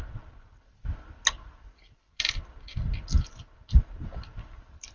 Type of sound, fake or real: real